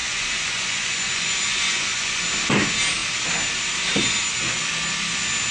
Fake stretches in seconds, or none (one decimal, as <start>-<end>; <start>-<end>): 0.0-2.2